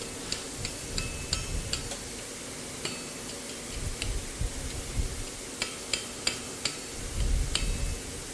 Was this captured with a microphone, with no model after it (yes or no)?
yes